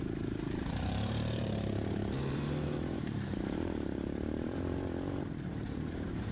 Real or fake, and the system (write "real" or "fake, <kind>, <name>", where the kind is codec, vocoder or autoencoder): fake, vocoder, BigVGAN v2